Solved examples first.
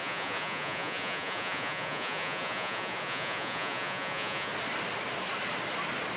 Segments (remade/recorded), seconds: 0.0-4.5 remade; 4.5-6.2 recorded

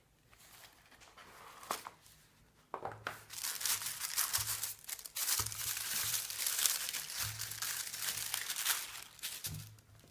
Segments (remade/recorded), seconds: 0.0-5.2 recorded; 5.2-6.6 remade; 6.6-10.1 recorded

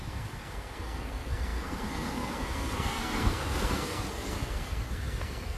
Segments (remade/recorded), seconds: 0.0-5.6 remade

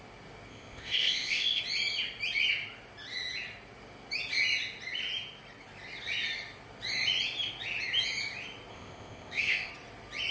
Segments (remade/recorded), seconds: 0.0-0.5 recorded; 0.5-1.6 remade; 1.6-8.7 recorded; 8.7-9.7 remade; 9.7-10.3 recorded